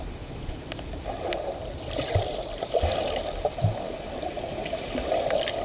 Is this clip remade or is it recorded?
recorded